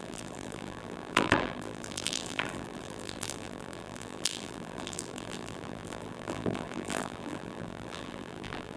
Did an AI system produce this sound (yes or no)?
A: yes